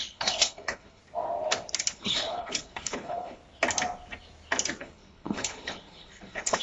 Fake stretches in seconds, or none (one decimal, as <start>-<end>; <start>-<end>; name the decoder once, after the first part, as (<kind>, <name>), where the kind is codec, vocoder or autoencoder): 0.0-1.0 (codec, HILCodec); 1.9-3.4; 4.8-6.6